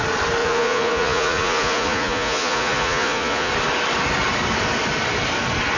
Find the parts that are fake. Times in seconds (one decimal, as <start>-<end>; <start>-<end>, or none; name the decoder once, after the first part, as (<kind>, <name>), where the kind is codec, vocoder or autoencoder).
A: 0.4-3.5 (vocoder, Vocos)